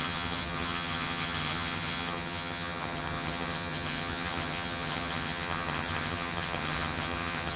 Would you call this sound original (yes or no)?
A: no